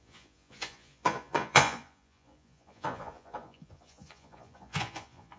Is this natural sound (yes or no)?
no